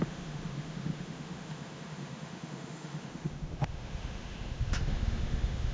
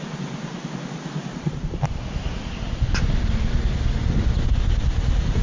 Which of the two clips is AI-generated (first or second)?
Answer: first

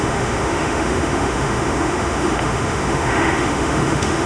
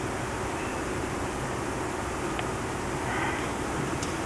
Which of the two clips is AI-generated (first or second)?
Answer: first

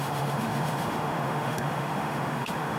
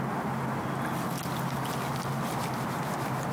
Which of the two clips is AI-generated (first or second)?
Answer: first